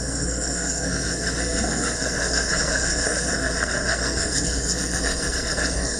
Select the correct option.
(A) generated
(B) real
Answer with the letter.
A